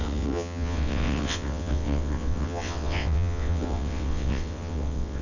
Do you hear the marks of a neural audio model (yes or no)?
yes